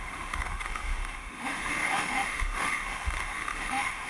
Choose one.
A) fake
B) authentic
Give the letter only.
A